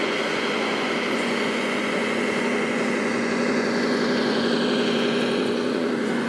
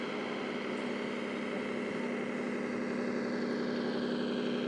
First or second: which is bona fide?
second